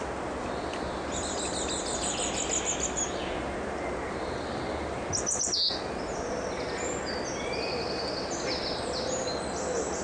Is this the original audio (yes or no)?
yes